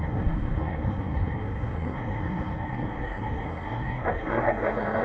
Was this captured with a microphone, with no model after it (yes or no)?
no